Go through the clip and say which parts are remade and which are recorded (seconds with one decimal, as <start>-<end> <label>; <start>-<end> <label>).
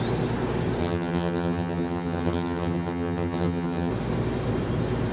0.0-0.8 recorded; 0.8-3.9 remade; 3.9-5.1 recorded